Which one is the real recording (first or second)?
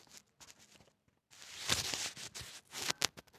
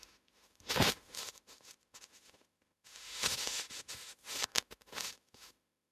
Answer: first